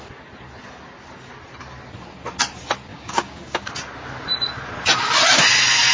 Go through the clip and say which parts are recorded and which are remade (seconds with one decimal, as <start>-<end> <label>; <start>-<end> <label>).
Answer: 0.0-2.9 recorded; 2.9-3.7 remade; 3.7-5.9 recorded